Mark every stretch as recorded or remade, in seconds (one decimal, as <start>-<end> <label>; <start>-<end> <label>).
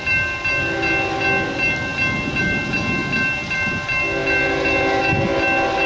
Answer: 0.0-5.9 recorded